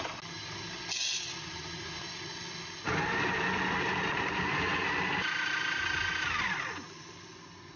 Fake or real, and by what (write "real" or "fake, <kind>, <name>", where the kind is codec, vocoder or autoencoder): real